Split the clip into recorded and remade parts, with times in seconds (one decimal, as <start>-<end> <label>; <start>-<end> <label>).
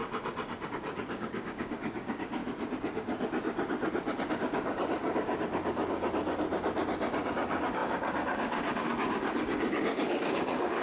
0.0-0.7 recorded; 0.7-2.4 remade; 2.4-4.3 recorded; 4.3-5.0 remade; 5.0-7.3 recorded; 7.3-10.8 remade